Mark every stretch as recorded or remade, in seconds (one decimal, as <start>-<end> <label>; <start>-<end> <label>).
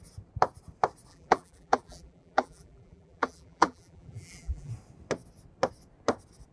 0.0-1.1 recorded; 1.1-4.7 remade; 4.7-6.5 recorded